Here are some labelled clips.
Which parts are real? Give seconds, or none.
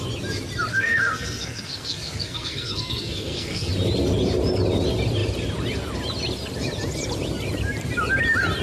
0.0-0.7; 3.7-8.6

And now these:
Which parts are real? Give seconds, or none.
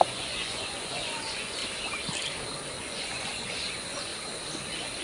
1.6-2.8; 4.1-5.0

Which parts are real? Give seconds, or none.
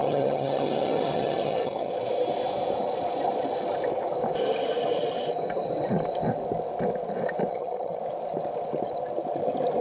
1.9-7.5; 8.0-9.8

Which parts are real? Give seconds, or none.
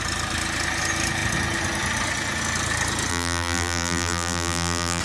0.0-3.1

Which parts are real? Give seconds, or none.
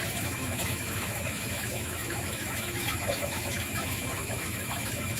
none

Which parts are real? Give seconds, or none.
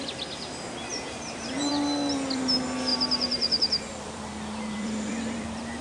0.0-0.9; 1.7-2.9